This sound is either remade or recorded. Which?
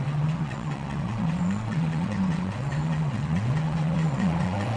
remade